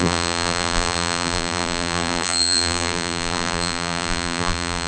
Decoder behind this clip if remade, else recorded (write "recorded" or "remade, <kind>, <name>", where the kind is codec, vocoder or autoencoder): remade, vocoder, BigVGAN v2